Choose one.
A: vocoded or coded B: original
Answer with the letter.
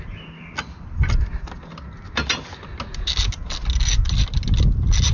B